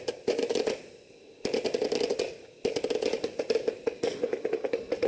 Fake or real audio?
real